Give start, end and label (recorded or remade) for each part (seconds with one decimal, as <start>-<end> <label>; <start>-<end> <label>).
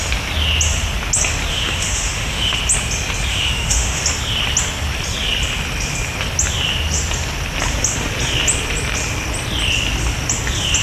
0.0-1.5 recorded; 1.5-2.6 remade; 2.6-3.3 recorded; 3.3-4.0 remade; 4.0-10.8 recorded